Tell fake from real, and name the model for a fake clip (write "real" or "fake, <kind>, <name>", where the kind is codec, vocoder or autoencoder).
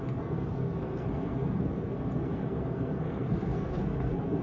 fake, codec, SNAC